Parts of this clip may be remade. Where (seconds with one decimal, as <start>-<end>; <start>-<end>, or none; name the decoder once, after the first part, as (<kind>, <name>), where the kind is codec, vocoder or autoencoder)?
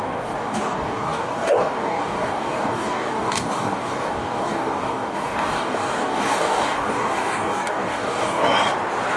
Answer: 0.0-8.4 (codec, DAC)